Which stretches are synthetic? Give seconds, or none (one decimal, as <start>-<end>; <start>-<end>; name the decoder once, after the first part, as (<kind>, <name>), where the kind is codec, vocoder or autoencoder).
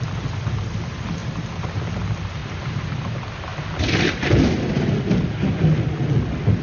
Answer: 1.2-1.8 (vocoder, BigVGAN v2); 2.4-3.1